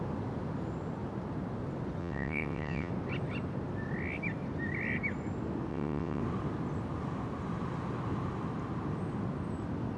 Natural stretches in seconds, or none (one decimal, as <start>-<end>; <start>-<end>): 0.0-2.0; 2.9-5.7; 6.2-10.0